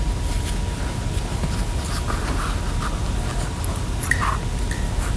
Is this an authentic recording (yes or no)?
yes